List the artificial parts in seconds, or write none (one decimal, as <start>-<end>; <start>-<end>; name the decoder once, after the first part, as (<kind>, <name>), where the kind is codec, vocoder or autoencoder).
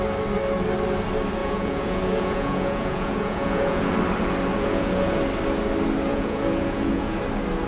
1.4-3.9 (vocoder, Vocos); 4.5-5.2; 6.1-7.2